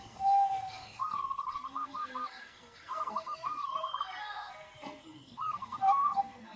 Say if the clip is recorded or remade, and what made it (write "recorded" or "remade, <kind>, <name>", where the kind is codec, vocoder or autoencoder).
remade, codec, SNAC